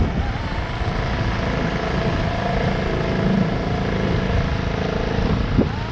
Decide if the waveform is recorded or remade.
recorded